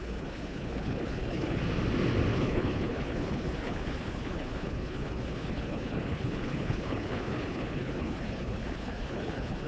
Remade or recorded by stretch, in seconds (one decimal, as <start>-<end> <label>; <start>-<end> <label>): 0.0-1.6 remade; 1.6-2.3 recorded; 2.3-9.7 remade